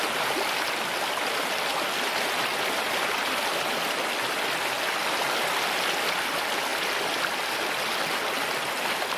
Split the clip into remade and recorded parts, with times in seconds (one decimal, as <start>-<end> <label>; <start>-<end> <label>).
0.0-9.2 recorded